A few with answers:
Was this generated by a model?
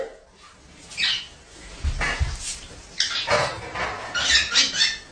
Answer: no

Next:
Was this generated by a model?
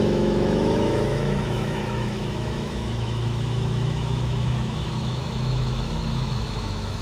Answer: yes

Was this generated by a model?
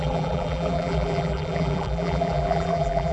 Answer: yes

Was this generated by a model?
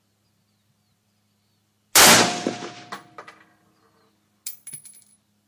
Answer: no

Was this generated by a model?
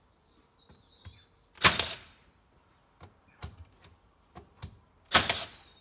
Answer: no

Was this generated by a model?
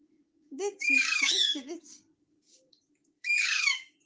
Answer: yes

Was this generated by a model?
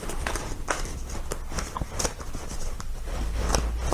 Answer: no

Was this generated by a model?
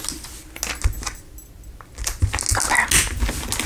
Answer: no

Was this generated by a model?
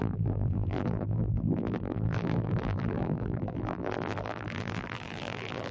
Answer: yes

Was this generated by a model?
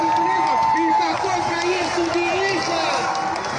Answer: no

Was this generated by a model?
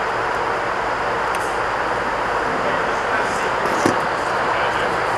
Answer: no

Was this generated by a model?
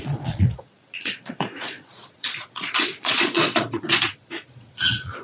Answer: yes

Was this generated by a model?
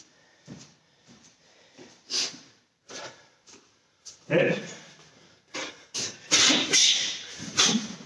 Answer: yes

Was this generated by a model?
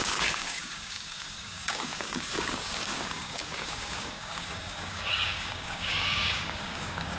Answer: yes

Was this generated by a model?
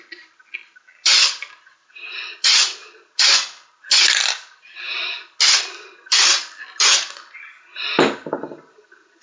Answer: no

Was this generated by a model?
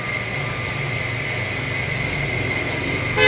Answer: no